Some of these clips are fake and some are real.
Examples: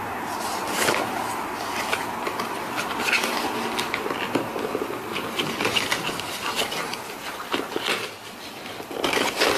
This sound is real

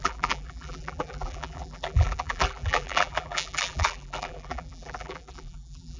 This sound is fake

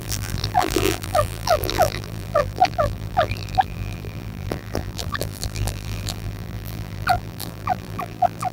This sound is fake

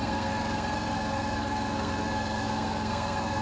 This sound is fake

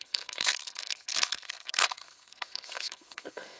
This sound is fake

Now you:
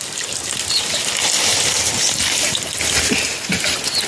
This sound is real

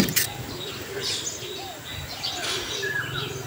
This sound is real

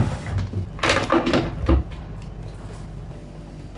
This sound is fake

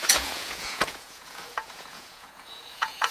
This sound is fake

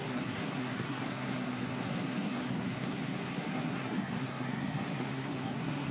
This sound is fake